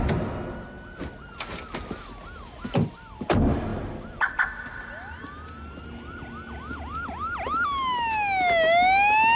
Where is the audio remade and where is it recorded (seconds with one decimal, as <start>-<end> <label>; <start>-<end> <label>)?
0.0-9.4 recorded